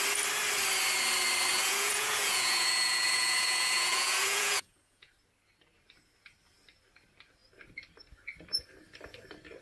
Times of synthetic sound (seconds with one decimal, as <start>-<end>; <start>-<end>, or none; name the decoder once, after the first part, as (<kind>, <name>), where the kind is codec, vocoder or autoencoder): 1.5-5.1 (vocoder, Vocos)